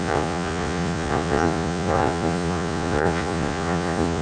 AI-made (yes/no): yes